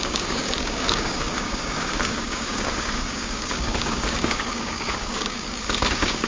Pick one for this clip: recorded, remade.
remade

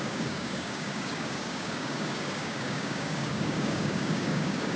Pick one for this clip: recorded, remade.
remade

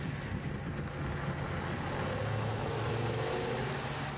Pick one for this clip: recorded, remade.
recorded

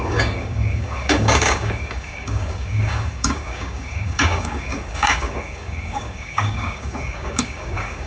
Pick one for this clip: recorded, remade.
remade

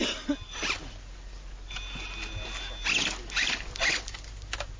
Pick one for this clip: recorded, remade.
recorded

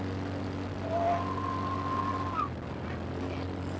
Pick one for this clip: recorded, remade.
recorded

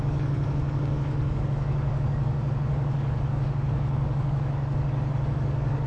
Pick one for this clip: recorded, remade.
remade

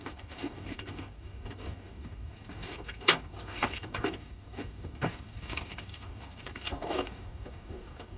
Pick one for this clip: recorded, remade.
remade